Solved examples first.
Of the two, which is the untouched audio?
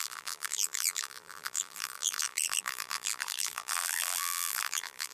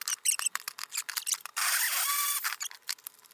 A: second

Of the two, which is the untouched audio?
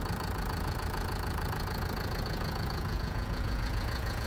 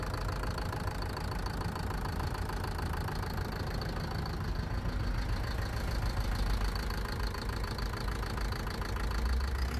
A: second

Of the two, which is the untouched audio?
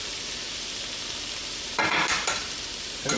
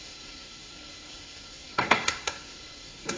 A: first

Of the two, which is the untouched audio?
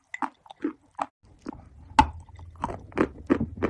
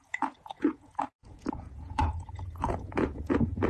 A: first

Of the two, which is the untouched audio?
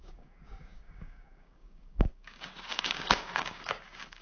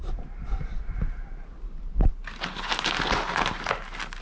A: second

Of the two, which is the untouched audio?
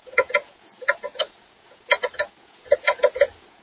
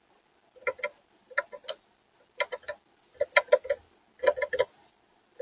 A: second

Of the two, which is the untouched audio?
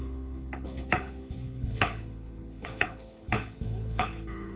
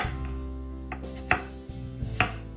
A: second